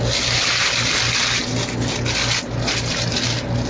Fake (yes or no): no